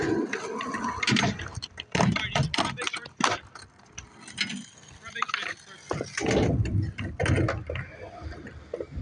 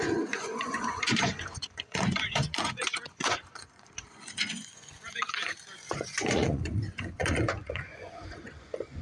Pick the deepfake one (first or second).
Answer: second